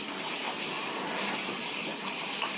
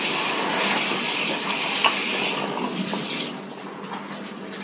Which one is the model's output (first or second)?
first